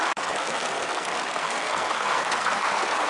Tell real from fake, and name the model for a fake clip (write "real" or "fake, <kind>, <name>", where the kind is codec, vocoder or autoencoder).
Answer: fake, codec, SNAC